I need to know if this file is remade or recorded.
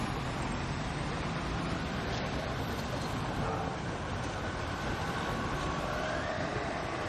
remade